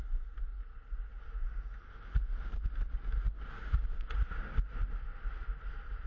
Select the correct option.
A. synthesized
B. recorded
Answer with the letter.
B